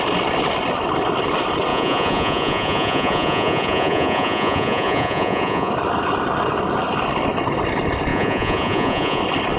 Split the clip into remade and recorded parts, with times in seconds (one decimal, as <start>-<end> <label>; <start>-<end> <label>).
0.0-1.7 recorded; 1.7-5.7 remade; 5.7-8.1 recorded; 8.1-9.2 remade; 9.2-9.6 recorded